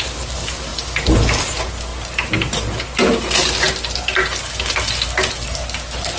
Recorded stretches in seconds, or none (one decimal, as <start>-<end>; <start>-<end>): 0.0-6.2